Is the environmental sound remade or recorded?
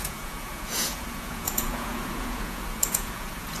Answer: remade